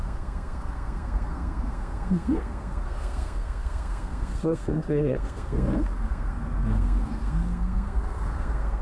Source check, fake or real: fake